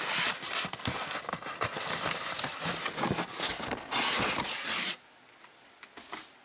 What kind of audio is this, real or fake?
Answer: real